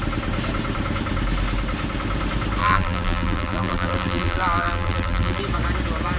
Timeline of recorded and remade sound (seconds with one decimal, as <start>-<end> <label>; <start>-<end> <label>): 0.0-2.6 recorded; 2.6-5.4 remade; 5.4-6.2 recorded